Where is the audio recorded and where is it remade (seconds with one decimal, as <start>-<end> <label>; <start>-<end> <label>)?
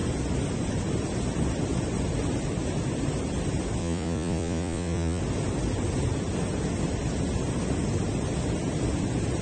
0.0-3.8 recorded; 3.8-5.2 remade; 5.2-9.4 recorded